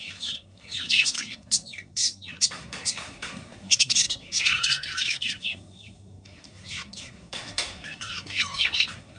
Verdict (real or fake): fake